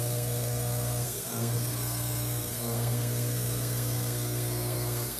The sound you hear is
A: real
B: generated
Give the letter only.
B